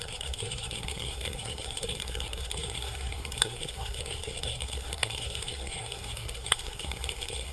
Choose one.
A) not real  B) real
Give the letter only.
A